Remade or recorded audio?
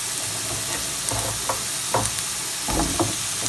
recorded